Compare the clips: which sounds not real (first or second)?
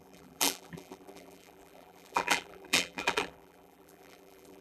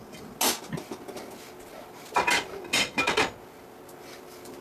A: first